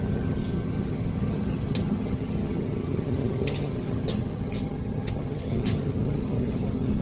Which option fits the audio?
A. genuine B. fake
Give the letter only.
B